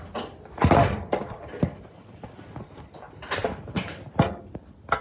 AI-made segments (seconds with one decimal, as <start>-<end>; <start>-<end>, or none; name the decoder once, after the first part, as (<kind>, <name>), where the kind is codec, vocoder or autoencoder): 0.8-3.8 (vocoder, BigVGAN v2)